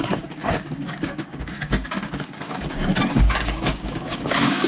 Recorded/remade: remade